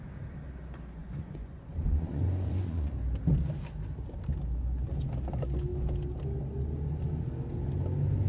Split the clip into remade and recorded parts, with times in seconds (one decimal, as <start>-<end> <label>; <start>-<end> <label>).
0.0-1.0 recorded; 1.0-2.9 remade; 2.9-8.3 recorded